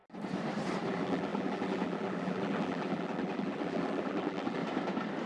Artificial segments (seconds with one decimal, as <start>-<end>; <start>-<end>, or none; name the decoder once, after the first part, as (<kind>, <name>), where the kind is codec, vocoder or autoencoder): 0.9-4.6 (vocoder, BigVGAN v2)